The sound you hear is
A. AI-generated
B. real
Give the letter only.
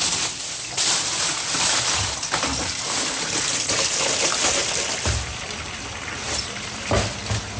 B